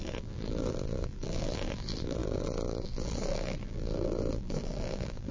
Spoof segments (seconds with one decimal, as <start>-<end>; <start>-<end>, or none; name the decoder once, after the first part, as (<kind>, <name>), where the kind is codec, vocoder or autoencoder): 0.0-5.3 (vocoder, BigVGAN v2)